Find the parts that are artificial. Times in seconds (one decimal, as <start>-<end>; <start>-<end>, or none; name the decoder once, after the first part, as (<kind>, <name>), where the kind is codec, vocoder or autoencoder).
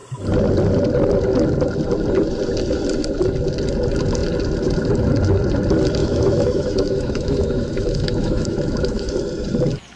6.0-9.1 (autoencoder, DAC-VAE)